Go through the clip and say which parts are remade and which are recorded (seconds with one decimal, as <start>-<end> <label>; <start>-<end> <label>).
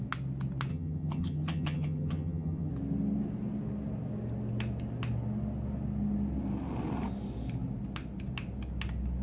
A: 0.0-0.7 recorded; 0.7-2.7 remade; 2.7-9.2 recorded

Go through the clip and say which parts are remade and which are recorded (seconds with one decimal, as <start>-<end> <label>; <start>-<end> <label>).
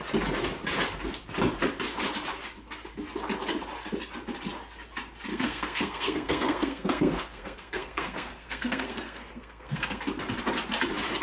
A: 0.0-5.3 recorded; 5.3-10.0 remade; 10.0-11.2 recorded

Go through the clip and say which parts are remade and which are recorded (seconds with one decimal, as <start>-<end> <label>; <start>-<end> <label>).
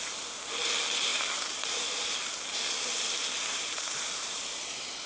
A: 0.0-1.1 recorded; 1.1-2.4 remade; 2.4-3.2 recorded; 3.2-4.6 remade; 4.6-5.1 recorded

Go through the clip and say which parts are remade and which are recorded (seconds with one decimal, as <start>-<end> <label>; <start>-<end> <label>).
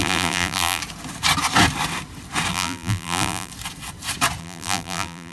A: 0.0-0.8 remade; 0.8-2.5 recorded; 2.5-3.5 remade; 3.5-4.4 recorded; 4.4-5.3 remade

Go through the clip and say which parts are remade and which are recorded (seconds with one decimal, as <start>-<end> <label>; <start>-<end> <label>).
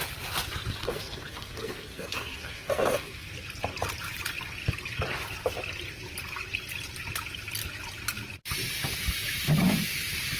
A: 0.0-0.8 recorded; 0.8-3.3 remade; 3.3-10.4 recorded